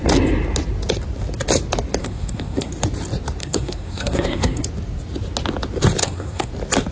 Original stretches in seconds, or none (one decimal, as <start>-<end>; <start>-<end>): 0.0-2.0; 2.7-3.4; 4.6-6.0; 6.5-6.9